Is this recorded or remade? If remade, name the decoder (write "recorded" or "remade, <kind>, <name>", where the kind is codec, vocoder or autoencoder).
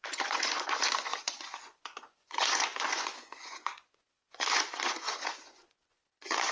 remade, vocoder, Vocos